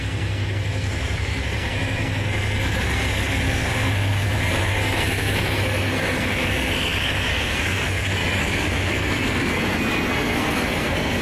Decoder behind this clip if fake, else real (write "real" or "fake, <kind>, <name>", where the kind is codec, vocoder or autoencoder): fake, codec, SNAC